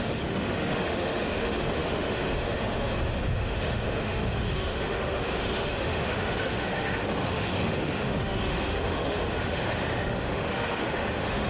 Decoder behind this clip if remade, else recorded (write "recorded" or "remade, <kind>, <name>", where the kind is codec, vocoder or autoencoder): remade, autoencoder, DAC-VAE